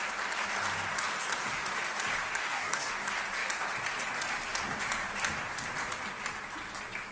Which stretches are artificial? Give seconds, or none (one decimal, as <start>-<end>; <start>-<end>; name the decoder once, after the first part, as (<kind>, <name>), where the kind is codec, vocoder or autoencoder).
2.4-2.9 (codec, DAC)